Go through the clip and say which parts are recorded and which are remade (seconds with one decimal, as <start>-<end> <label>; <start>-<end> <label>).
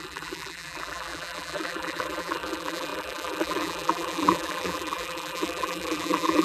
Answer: 0.0-6.4 remade